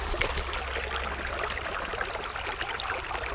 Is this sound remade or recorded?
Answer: recorded